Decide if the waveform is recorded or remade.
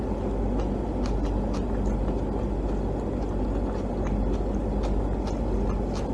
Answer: recorded